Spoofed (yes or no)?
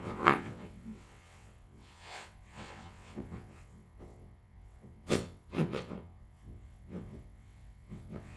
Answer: yes